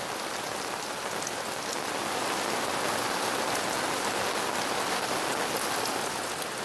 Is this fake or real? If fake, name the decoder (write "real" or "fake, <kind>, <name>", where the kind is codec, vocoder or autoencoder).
real